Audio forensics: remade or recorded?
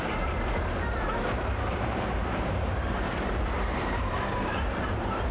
remade